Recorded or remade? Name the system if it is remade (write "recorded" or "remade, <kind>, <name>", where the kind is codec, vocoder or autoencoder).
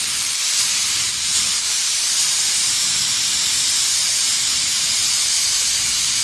remade, vocoder, BigVGAN v2